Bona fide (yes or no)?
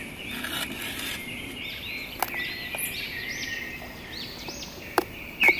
yes